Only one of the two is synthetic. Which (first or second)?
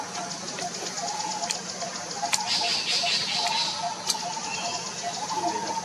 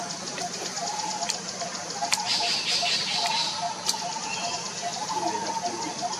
second